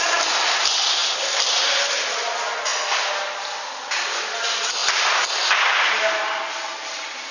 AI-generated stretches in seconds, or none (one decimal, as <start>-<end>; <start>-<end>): none